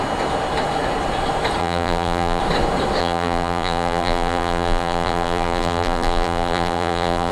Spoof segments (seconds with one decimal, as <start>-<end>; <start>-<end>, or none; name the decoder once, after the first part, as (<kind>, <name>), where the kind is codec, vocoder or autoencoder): 1.6-2.4 (vocoder, BigVGAN v2); 3.0-7.3